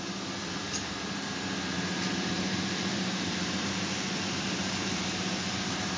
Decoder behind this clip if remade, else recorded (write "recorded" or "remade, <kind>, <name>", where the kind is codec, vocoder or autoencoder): remade, vocoder, BigVGAN v2